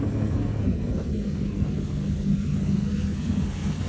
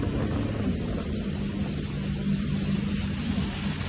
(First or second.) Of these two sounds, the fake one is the first